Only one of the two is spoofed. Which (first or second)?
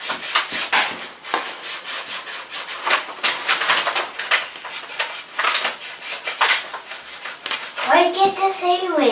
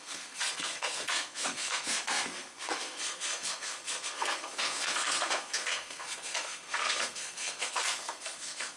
second